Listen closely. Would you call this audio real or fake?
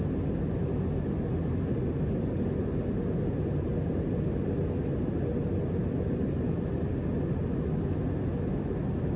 real